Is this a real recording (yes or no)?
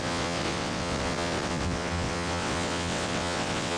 no